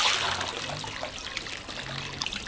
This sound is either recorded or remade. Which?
recorded